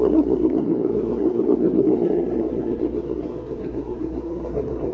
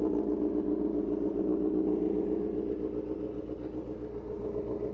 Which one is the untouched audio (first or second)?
second